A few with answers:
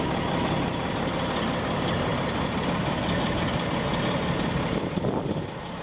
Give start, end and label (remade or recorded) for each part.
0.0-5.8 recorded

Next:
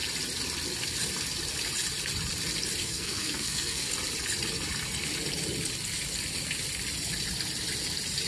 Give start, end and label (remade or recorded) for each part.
0.0-2.8 recorded; 2.8-3.9 remade; 3.9-8.3 recorded

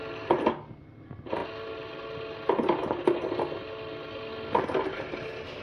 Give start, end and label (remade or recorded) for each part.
0.0-5.6 recorded